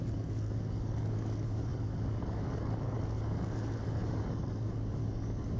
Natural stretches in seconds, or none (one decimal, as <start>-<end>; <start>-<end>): none